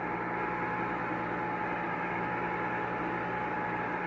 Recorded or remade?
recorded